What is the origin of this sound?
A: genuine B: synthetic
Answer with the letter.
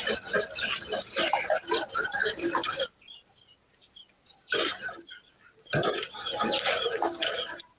A